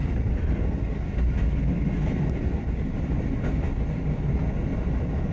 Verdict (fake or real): real